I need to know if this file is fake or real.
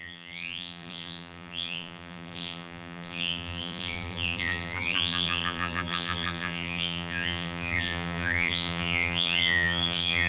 fake